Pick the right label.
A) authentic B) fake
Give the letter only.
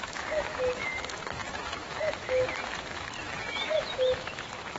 B